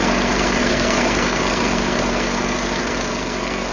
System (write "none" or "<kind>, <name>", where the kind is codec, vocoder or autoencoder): codec, SNAC